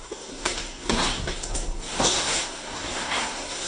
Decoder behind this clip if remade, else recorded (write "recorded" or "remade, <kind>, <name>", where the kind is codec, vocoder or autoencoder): remade, codec, SNAC